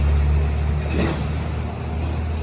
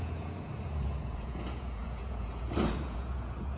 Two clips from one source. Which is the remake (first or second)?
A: second